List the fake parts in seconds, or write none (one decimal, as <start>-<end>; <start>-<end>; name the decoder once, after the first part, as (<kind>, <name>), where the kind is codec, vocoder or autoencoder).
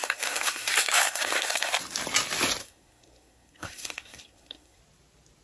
0.0-1.7 (codec, SNAC); 2.6-4.8